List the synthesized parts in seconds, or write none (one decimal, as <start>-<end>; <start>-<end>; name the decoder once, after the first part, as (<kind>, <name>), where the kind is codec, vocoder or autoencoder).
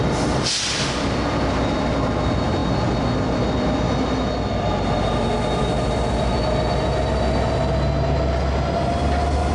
none